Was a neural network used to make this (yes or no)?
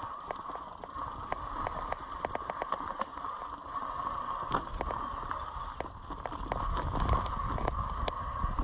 no